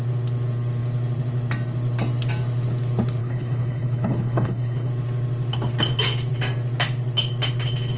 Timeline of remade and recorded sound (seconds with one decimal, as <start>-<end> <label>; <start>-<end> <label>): 0.0-3.2 recorded; 3.2-4.9 remade; 4.9-8.0 recorded